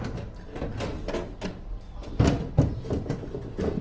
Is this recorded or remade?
recorded